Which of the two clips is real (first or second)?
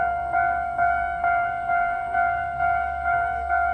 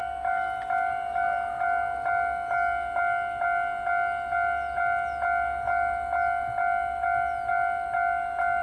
second